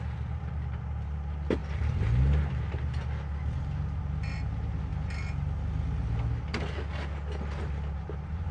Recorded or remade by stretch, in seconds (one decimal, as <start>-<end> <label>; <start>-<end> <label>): 0.0-8.5 recorded